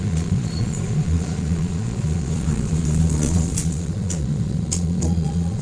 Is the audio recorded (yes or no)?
no